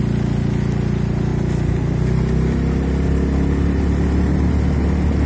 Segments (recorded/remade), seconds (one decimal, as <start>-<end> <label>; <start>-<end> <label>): 0.0-5.3 recorded